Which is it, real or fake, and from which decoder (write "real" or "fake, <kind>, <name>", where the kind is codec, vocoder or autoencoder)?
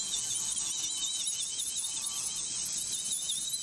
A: real